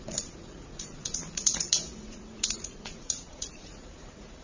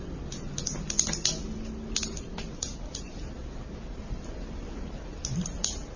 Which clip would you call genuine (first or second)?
second